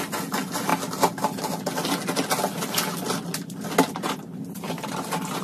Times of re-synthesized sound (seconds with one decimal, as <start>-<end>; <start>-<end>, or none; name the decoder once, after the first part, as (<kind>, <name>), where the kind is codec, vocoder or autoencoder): none